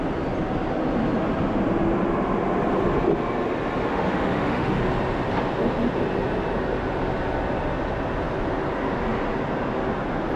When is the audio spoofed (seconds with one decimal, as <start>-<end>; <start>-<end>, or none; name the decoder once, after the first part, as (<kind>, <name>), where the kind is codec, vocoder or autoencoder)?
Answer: 3.9-4.8 (autoencoder, DAC-VAE)

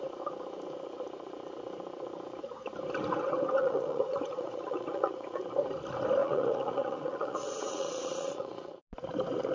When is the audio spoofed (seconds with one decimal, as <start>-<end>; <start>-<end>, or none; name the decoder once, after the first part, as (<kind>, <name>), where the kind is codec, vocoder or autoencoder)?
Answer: 3.6-5.4 (vocoder, Vocos); 6.2-8.8

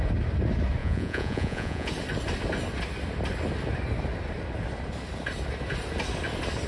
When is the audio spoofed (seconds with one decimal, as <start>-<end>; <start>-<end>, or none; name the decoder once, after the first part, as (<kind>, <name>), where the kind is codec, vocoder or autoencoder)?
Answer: 0.8-1.9 (vocoder, Vocos)

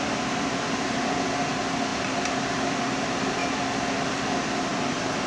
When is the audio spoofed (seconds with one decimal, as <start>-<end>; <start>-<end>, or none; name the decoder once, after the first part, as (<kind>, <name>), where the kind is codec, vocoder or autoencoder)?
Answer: 0.0-3.4 (vocoder, BigVGAN v2); 4.1-5.3

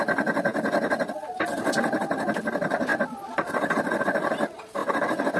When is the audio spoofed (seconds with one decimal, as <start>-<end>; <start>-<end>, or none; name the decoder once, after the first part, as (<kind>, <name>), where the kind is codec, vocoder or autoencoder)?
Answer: none

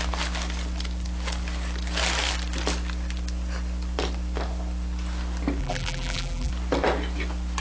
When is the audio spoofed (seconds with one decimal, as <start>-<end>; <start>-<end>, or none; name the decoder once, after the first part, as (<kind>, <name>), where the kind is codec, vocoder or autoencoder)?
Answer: 5.6-6.5 (vocoder, BigVGAN v2)

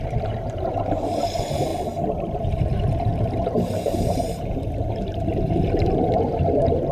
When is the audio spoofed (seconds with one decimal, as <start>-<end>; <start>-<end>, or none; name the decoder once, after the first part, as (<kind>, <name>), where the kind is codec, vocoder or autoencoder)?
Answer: 0.0-1.7 (vocoder, BigVGAN v2); 2.4-6.9